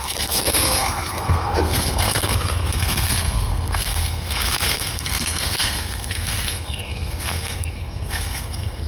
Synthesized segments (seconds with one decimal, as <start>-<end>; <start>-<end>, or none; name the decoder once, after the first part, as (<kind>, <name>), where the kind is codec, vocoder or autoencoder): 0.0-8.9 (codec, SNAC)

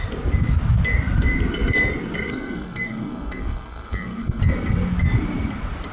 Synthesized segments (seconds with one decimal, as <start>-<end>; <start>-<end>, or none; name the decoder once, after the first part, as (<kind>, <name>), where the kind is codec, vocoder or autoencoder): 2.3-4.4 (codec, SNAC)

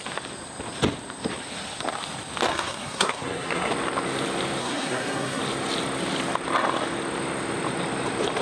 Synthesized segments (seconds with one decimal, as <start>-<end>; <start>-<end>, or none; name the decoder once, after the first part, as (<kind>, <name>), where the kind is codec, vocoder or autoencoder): 2.5-3.7 (codec, SNAC); 4.6-5.4

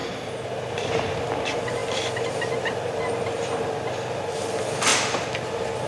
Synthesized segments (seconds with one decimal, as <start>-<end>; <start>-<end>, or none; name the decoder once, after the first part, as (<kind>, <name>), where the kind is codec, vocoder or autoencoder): none

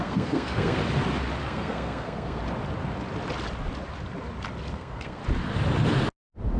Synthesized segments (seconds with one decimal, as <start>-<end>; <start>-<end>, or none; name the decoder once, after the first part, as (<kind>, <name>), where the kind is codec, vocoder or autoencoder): 0.0-0.8 (codec, SNAC); 1.4-2.4; 4.7-5.2

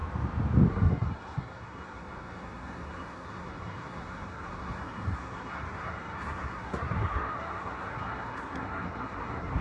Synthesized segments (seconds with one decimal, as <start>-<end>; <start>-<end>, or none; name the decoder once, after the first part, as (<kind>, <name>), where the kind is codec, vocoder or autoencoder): 0.7-9.6 (codec, SNAC)

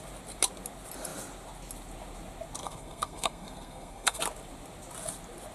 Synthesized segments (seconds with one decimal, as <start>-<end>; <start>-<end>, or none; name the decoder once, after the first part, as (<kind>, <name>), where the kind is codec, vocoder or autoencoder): 2.6-4.2 (codec, SNAC)

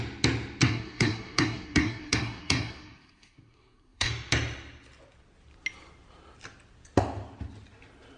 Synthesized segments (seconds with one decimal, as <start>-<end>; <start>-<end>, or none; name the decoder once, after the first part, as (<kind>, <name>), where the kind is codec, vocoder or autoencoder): 0.6-4.1 (codec, SNAC)